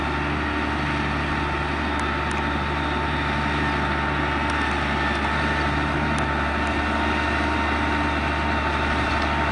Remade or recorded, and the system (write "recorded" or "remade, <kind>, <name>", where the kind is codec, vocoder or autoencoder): recorded